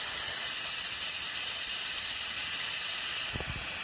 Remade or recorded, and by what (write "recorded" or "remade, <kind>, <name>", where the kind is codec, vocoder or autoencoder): recorded